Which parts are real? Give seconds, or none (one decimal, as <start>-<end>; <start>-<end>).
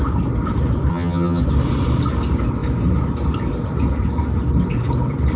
0.0-0.9; 1.4-5.4